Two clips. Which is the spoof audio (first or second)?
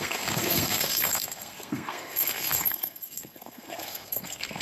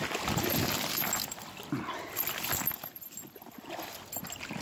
first